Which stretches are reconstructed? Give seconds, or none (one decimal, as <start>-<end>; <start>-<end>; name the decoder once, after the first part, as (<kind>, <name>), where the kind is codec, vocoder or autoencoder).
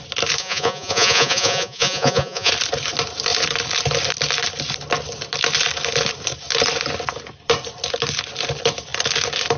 0.4-2.5 (vocoder, Vocos)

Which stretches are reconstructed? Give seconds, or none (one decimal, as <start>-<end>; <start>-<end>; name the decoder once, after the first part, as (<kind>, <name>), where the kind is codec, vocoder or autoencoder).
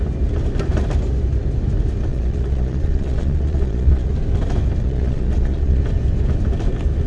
2.1-4.1 (vocoder, Vocos); 4.8-5.8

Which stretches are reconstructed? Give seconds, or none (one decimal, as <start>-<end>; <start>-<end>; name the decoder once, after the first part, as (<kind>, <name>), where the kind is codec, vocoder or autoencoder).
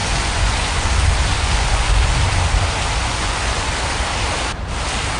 0.0-0.9 (vocoder, Vocos); 1.3-2.2; 3.0-3.7